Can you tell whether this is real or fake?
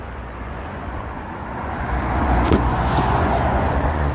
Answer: fake